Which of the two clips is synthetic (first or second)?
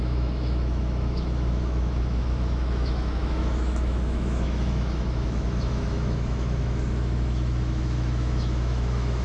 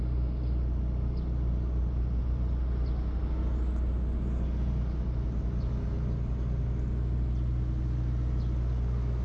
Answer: first